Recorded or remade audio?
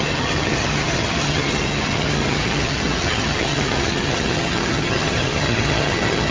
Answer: remade